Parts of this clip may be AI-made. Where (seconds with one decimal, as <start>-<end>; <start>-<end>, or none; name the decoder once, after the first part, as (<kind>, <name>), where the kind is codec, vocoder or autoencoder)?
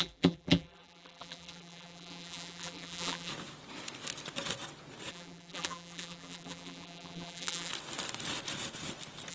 0.0-3.3 (vocoder, BigVGAN v2); 5.1-7.7